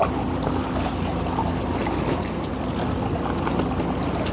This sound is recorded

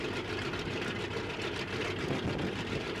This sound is recorded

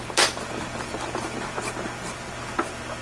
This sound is recorded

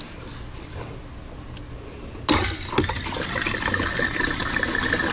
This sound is recorded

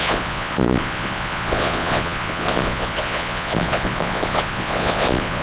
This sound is remade